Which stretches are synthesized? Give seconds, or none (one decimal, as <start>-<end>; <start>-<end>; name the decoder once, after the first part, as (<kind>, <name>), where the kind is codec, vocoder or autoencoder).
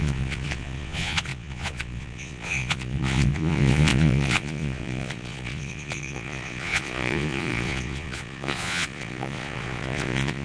0.0-10.4 (vocoder, Vocos)